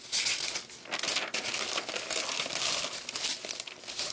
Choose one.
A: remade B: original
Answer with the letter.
B